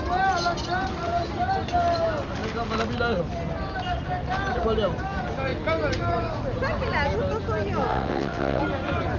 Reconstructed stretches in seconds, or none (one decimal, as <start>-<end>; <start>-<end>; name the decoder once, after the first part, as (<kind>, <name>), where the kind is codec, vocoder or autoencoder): 7.9-8.6 (vocoder, WaveNeXt)